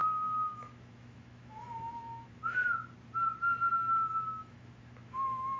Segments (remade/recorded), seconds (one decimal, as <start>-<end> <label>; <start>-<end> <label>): 0.0-2.4 remade; 2.4-4.4 recorded; 4.4-5.6 remade